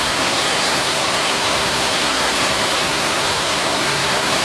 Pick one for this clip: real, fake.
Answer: fake